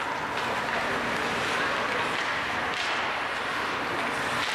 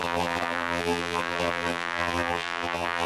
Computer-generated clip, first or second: second